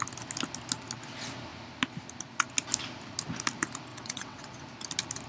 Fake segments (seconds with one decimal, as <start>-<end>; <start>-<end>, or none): 3.9-4.6